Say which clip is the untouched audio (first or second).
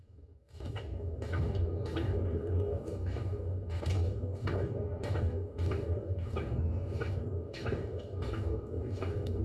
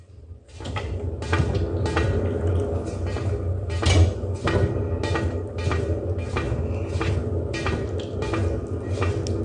second